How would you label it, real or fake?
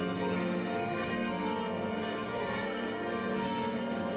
fake